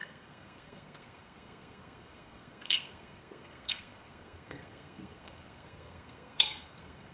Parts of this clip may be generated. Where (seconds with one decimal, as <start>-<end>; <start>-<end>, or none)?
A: 0.0-7.1